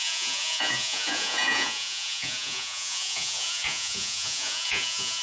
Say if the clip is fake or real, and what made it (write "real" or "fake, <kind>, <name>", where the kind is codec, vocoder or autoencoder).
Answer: fake, vocoder, Vocos